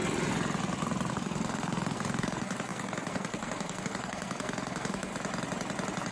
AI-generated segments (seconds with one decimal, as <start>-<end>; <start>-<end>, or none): 1.1-5.1